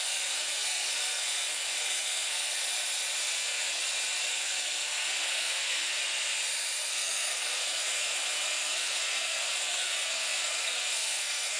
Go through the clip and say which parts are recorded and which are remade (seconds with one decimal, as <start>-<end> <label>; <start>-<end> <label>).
0.0-2.5 remade; 2.5-3.2 recorded; 3.2-3.8 remade; 3.8-4.3 recorded; 4.3-6.0 remade; 6.0-6.9 recorded; 6.9-11.6 remade

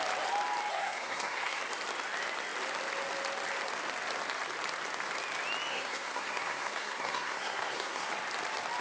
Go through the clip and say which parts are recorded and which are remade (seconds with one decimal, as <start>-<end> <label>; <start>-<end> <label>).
0.0-0.7 recorded; 0.7-1.6 remade; 1.6-5.7 recorded; 5.7-8.1 remade; 8.1-8.8 recorded

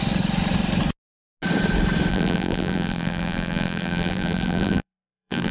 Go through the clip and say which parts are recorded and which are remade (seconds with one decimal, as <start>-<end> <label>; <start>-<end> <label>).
0.0-2.1 recorded; 2.1-5.5 remade

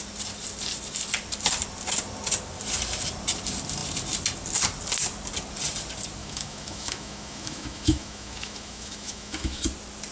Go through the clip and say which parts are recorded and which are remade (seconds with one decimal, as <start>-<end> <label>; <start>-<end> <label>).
0.0-6.2 recorded; 6.2-9.6 remade; 9.6-10.1 recorded

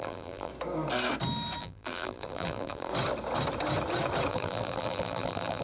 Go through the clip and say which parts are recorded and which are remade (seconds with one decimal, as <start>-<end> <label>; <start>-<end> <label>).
0.0-0.5 remade; 0.5-1.6 recorded; 1.6-2.9 remade; 2.9-4.3 recorded; 4.3-5.6 remade